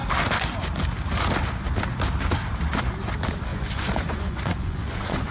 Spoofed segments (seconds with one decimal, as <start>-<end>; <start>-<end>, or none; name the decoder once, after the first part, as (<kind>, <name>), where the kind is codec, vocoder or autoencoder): 3.5-5.3 (vocoder, Vocos)